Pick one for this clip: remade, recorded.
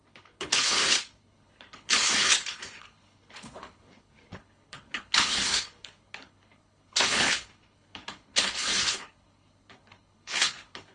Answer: remade